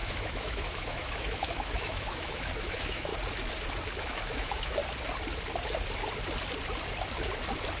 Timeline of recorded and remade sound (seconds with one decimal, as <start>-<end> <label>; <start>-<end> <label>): 0.0-3.1 remade; 3.1-4.0 recorded; 4.0-4.8 remade; 4.8-7.8 recorded